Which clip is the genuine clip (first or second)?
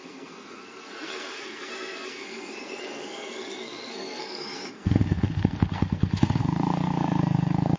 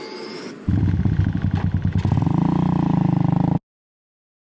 second